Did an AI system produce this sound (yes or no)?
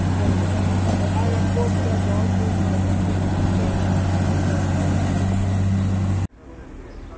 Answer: no